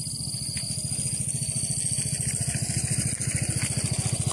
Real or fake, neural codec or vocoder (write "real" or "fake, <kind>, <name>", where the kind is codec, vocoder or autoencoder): real